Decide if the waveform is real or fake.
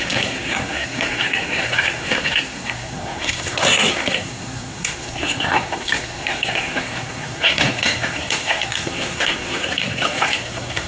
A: fake